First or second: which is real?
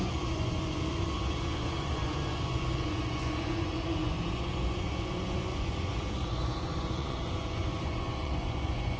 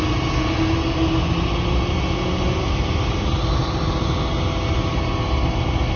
second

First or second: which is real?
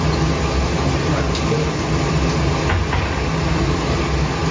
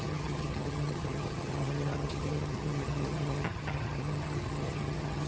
first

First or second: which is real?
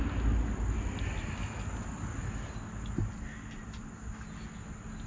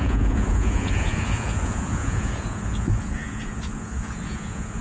first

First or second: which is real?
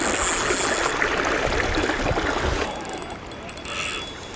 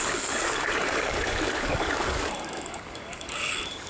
first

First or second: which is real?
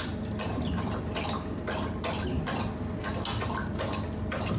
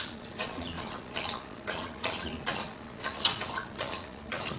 first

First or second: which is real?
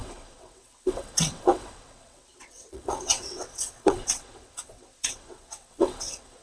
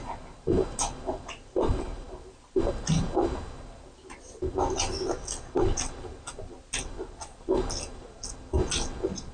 second